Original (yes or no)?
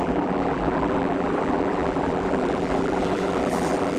no